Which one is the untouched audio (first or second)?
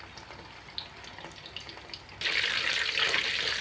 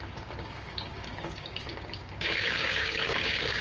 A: first